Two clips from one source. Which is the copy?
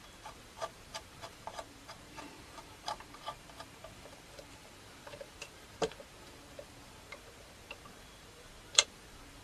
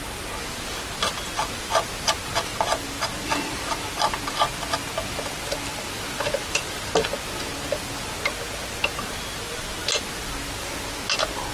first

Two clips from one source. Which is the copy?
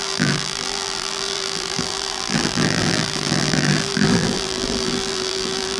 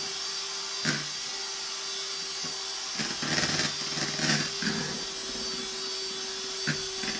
first